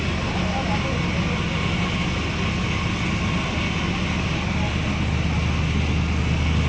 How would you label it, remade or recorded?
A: recorded